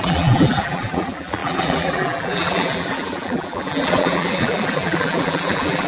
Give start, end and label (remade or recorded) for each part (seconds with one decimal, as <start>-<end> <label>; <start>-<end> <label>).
0.0-5.9 remade